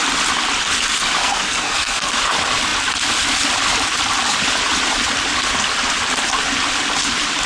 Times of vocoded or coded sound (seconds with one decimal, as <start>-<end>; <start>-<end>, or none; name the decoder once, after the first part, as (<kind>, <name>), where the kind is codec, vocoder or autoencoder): 1.2-2.1 (codec, SNAC)